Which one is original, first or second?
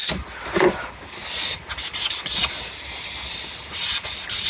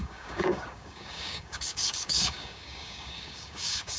first